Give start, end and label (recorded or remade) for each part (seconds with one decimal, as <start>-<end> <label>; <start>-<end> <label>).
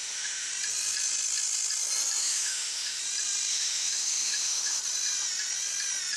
0.0-0.5 remade; 0.5-2.2 recorded; 2.2-3.0 remade; 3.0-3.5 recorded; 3.5-4.8 remade; 4.8-6.2 recorded